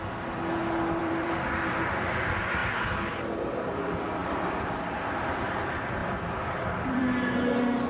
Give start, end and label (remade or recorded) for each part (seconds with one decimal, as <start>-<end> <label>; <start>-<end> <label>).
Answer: 0.0-1.0 recorded; 1.0-1.7 remade; 1.7-2.6 recorded; 2.6-3.8 remade; 3.8-4.2 recorded; 4.2-5.6 remade; 5.6-6.0 recorded; 6.0-7.0 remade; 7.0-7.9 recorded